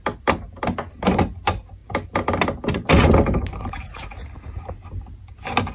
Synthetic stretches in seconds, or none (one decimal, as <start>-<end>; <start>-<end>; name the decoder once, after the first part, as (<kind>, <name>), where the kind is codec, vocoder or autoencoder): none